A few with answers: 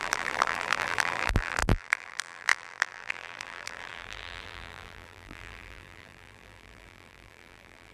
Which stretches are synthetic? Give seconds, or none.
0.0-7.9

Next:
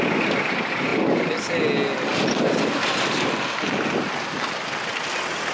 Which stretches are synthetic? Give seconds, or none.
none